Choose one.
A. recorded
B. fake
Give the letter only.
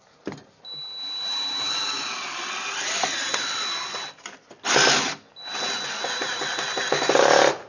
A